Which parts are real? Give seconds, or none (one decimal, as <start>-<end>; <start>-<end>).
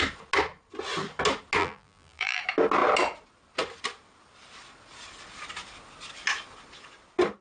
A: 0.0-1.6; 2.4-7.4